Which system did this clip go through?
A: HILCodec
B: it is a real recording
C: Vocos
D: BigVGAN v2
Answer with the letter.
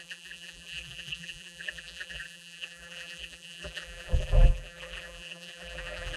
D